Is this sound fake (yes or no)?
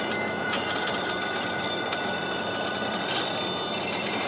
no